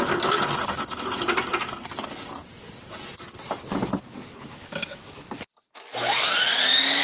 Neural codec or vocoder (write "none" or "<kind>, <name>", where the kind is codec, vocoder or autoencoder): none